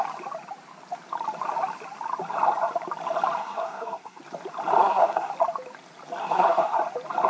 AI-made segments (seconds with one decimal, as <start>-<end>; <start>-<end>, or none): 3.4-4.2; 4.8-5.3; 6.2-6.8

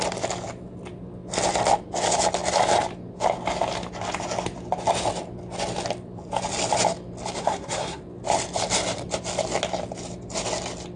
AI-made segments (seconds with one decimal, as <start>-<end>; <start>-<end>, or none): 7.4-8.0

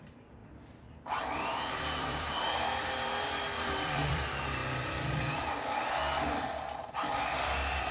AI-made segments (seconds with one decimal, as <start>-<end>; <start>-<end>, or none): 0.0-0.4; 2.0-4.6; 6.8-7.9

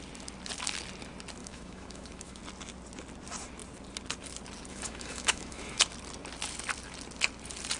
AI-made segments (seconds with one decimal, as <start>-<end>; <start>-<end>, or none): 1.4-2.4; 4.7-5.8

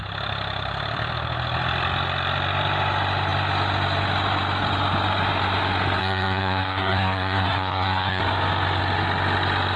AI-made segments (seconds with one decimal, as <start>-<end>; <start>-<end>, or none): 6.0-8.2

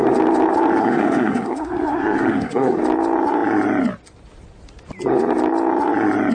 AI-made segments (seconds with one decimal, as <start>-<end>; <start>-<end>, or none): 0.8-2.8